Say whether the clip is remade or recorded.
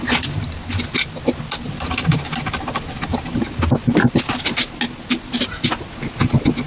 recorded